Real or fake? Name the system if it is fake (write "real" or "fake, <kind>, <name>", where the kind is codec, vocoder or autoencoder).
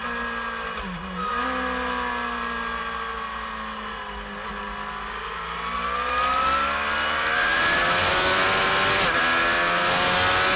real